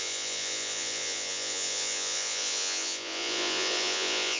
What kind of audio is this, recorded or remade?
remade